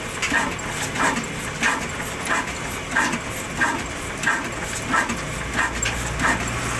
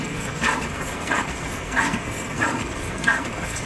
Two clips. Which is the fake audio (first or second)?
second